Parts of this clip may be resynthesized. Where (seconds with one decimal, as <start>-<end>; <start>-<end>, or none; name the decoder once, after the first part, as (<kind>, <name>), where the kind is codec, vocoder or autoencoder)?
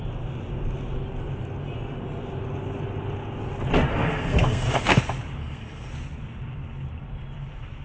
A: 3.9-5.0 (codec, SNAC); 5.4-5.9